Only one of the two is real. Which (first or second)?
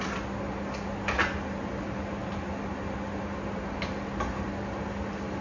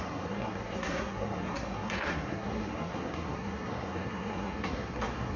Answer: first